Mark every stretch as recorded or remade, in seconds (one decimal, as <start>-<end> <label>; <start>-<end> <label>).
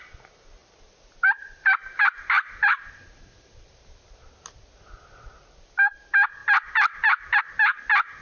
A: 0.0-0.6 recorded; 0.6-4.3 remade; 4.3-6.4 recorded; 6.4-7.4 remade; 7.4-8.2 recorded